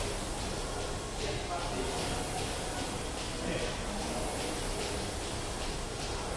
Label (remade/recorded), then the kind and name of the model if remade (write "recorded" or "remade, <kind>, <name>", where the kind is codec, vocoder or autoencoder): recorded